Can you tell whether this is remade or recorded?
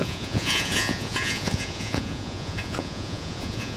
remade